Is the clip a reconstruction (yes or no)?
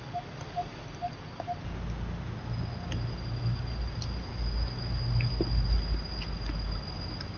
no